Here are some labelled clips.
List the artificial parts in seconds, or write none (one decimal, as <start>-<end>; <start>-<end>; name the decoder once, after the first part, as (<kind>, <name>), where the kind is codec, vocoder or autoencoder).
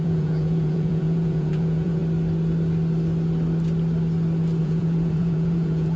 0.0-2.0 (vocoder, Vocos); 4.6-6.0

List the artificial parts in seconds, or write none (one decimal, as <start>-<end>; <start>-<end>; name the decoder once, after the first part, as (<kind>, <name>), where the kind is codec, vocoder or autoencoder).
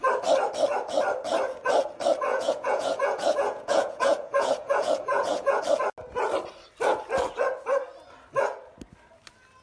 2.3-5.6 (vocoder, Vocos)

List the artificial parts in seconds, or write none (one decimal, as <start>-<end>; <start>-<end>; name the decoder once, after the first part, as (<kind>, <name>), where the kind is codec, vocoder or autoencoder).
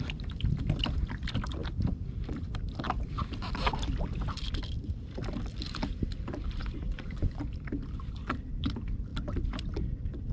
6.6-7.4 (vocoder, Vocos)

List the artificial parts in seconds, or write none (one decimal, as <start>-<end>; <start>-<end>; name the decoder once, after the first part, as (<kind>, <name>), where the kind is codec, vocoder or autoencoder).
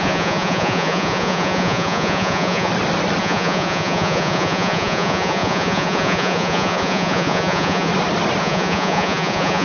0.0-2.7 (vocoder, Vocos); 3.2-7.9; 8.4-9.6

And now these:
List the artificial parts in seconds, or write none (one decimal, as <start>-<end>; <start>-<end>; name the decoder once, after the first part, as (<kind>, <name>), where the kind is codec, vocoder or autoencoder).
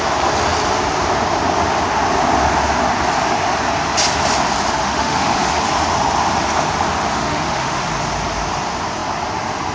4.8-5.6 (autoencoder, DAC-VAE); 7.1-7.8